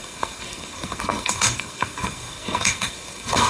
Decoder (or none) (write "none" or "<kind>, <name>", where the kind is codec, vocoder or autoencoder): codec, SNAC